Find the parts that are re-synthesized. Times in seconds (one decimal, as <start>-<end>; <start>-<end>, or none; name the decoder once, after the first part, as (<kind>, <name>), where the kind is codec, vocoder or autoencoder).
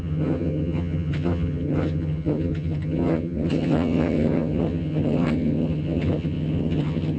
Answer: 0.0-7.2 (vocoder, HiFi-GAN)